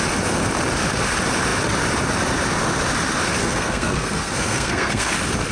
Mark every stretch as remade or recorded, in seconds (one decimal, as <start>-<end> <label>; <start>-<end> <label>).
0.0-3.4 recorded; 3.4-5.1 remade; 5.1-5.5 recorded